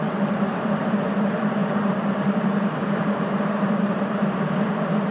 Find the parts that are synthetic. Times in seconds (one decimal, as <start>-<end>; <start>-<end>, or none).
1.6-4.2